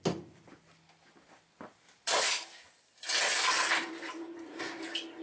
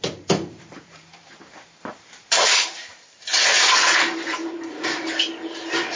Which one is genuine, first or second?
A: first